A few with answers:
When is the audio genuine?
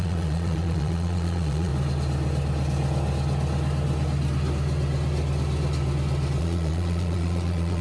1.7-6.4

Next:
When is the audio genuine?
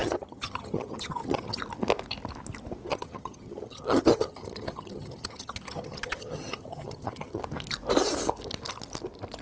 1.6-2.9; 7.4-9.4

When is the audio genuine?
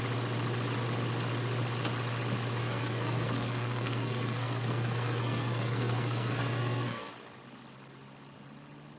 0.0-2.6; 7.1-9.0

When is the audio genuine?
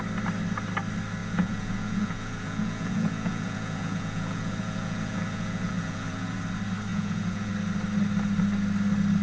0.0-1.2; 6.4-6.9; 7.5-9.2